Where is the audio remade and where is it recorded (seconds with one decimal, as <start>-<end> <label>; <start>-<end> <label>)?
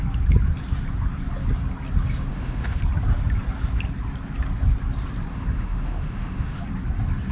0.0-2.3 recorded; 2.3-2.8 remade; 2.8-5.3 recorded; 5.3-6.6 remade; 6.6-7.3 recorded